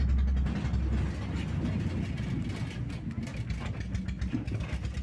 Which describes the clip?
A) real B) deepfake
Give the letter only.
A